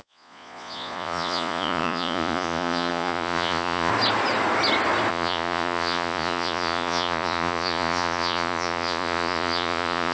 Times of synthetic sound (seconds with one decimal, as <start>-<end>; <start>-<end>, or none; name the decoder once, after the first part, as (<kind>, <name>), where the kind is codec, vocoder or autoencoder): 0.0-3.9 (vocoder, Vocos); 5.1-10.1